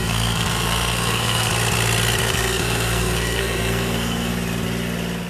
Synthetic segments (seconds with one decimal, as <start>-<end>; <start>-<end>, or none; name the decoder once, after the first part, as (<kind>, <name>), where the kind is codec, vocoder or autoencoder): 0.0-1.5 (codec, SNAC); 2.2-4.3

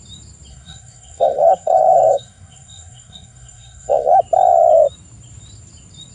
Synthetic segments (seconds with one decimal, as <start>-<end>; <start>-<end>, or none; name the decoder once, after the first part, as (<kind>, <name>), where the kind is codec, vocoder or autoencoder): 0.5-4.1 (codec, SNAC)

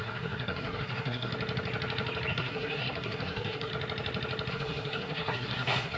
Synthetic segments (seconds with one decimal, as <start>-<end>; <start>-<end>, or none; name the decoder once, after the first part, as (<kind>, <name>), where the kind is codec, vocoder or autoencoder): 0.0-1.3 (codec, SNAC); 2.3-3.7; 4.5-6.0

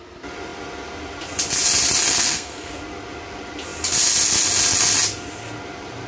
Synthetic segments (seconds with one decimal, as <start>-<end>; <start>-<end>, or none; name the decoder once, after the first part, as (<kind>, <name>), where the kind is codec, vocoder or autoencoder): 2.1-2.7 (codec, SNAC)

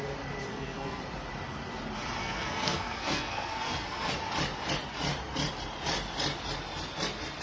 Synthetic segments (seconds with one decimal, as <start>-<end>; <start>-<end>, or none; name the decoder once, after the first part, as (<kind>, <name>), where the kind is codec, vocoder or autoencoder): 0.5-1.0 (codec, SNAC); 2.2-4.1